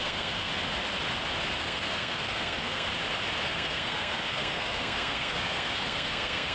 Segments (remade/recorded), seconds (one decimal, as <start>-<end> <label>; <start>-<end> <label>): 0.0-0.5 remade; 0.5-1.6 recorded; 1.6-2.9 remade; 2.9-3.4 recorded; 3.4-6.5 remade